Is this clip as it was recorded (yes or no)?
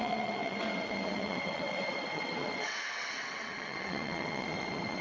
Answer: no